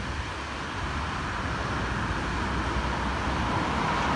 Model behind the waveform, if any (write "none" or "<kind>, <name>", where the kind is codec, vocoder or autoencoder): none